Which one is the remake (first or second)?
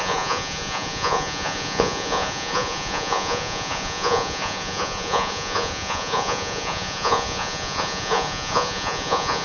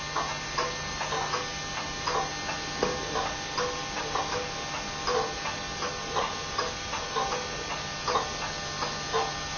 first